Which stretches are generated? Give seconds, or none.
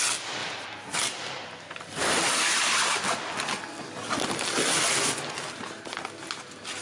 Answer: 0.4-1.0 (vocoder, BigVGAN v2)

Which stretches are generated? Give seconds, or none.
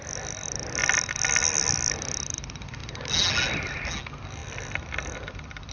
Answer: none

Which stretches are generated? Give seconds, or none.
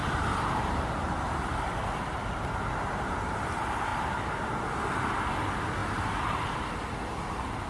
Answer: 0.0-1.8 (vocoder, BigVGAN v2); 3.9-4.6; 5.8-6.7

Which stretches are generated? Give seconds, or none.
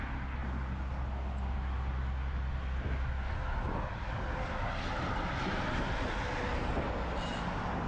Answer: none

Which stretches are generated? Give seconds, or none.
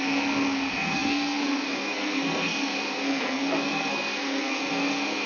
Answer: 0.0-5.3 (codec, SNAC)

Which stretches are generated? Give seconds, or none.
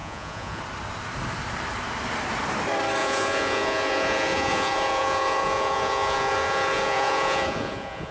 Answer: 0.0-0.6 (vocoder, Vocos); 3.0-8.1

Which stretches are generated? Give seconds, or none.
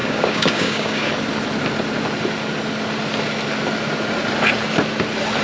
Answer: 0.0-1.1 (codec, DAC)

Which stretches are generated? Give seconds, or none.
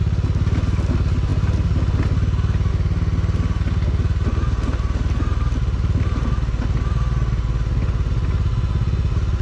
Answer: none